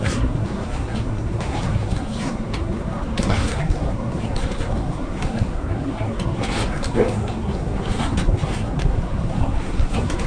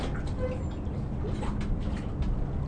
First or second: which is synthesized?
first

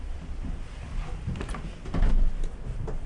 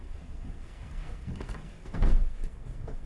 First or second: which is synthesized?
second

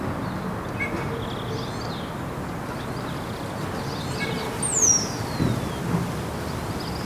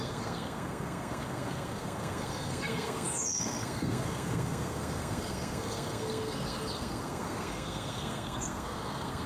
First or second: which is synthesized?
second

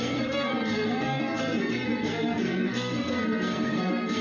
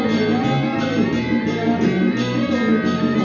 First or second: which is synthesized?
first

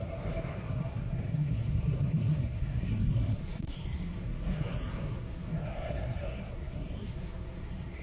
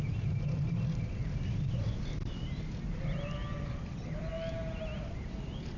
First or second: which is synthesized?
first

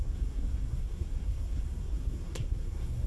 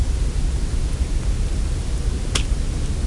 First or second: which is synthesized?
first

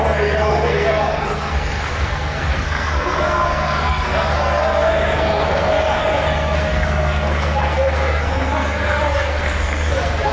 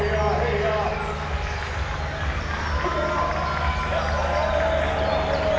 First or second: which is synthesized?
first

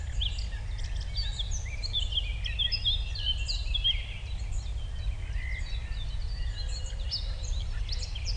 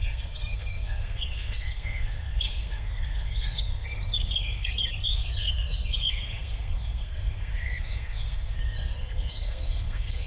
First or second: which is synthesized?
second